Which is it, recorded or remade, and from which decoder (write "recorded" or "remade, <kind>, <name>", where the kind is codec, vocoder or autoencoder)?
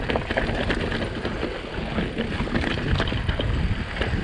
recorded